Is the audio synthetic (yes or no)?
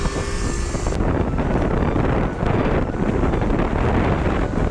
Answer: no